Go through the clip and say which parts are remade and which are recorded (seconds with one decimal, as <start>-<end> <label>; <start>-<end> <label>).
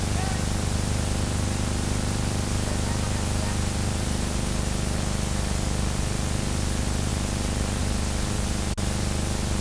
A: 0.0-9.6 recorded